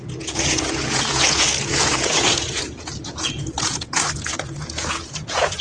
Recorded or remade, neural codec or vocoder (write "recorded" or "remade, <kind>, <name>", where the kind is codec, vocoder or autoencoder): remade, vocoder, Vocos